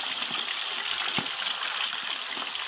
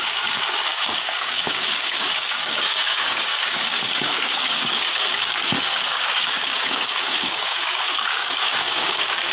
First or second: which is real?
first